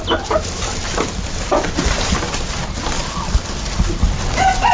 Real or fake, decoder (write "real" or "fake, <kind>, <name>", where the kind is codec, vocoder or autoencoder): real